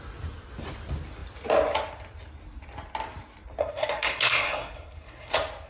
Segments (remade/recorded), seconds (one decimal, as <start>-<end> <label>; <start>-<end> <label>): 0.0-3.6 recorded; 3.6-5.3 remade; 5.3-5.7 recorded

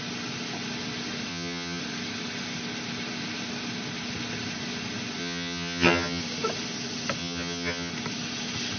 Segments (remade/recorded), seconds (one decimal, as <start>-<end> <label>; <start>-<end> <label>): 0.0-1.3 recorded; 1.3-1.8 remade; 1.8-5.2 recorded; 5.2-6.2 remade; 6.2-7.2 recorded; 7.2-7.9 remade; 7.9-8.8 recorded

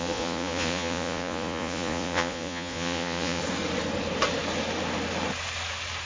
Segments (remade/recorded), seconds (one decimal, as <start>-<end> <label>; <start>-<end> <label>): 0.0-3.4 remade; 3.4-6.1 recorded

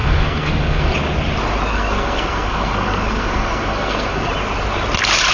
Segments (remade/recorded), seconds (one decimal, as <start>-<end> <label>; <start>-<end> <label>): 0.0-0.9 remade; 0.9-1.7 recorded; 1.7-4.3 remade; 4.3-5.3 recorded

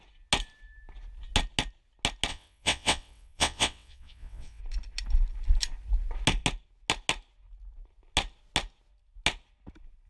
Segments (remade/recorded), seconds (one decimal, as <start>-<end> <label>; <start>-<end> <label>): 0.0-2.3 recorded; 2.3-4.6 remade; 4.6-10.1 recorded

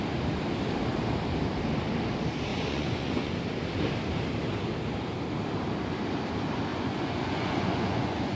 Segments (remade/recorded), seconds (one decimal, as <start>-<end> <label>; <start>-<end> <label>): 0.0-2.5 recorded; 2.5-3.3 remade; 3.3-6.7 recorded; 6.7-8.4 remade

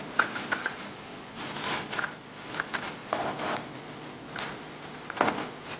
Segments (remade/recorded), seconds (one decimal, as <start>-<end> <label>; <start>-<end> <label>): 0.0-0.6 recorded; 0.6-1.4 remade; 1.4-5.8 recorded

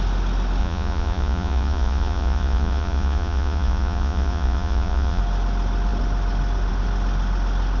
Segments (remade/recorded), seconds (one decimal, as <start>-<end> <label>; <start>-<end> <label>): 0.0-0.6 recorded; 0.6-5.2 remade; 5.2-7.8 recorded